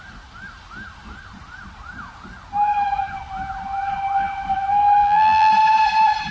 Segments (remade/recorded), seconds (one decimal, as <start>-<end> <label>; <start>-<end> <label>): 0.0-5.0 recorded; 5.0-5.5 remade; 5.5-6.3 recorded